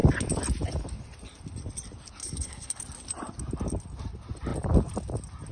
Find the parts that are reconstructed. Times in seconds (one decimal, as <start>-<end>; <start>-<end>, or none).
2.2-2.8